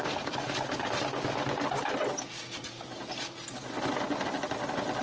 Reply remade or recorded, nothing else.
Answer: recorded